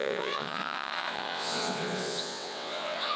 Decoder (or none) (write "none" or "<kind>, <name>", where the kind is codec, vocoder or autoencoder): vocoder, WaveNeXt